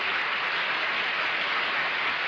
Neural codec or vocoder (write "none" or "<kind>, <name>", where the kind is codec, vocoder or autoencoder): none